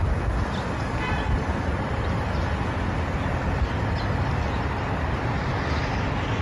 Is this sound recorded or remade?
recorded